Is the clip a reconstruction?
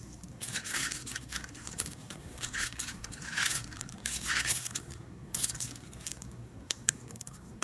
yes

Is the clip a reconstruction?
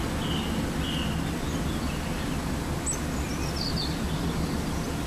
no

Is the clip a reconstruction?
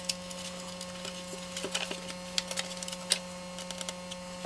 no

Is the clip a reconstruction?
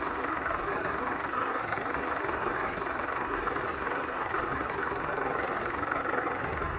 yes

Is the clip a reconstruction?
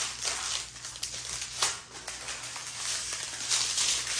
no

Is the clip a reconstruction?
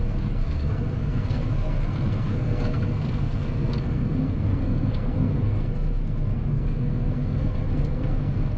yes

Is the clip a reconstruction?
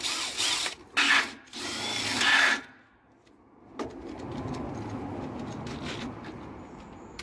no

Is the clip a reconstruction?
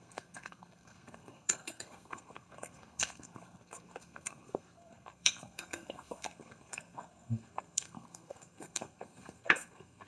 yes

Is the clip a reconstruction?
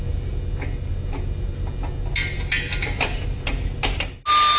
no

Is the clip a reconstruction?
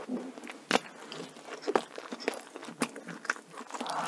no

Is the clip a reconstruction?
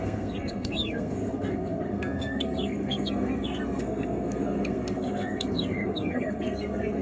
yes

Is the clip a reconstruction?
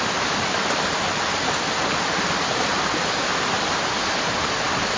no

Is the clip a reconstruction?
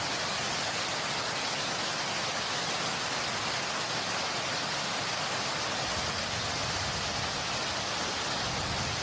no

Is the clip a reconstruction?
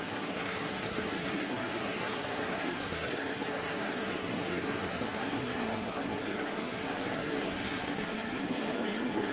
yes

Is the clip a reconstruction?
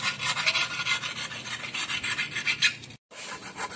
no